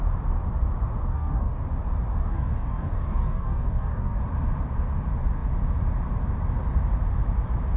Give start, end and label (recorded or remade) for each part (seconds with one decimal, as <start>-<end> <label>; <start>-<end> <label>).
0.0-1.1 recorded; 1.1-1.6 remade; 1.6-2.2 recorded; 2.2-4.2 remade; 4.2-7.8 recorded